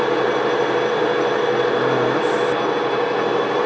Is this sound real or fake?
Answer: real